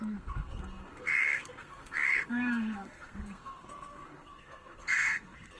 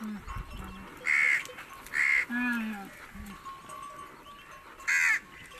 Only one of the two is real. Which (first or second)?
second